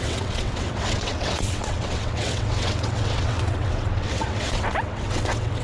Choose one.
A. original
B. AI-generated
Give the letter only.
B